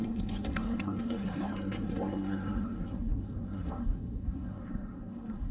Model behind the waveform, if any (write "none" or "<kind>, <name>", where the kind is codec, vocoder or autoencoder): codec, SNAC